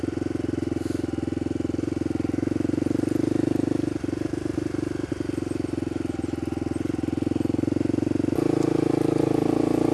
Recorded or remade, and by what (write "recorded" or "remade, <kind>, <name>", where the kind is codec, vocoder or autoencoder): recorded